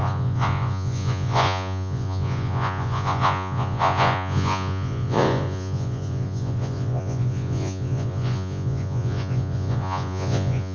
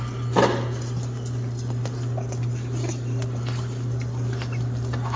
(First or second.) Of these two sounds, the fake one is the first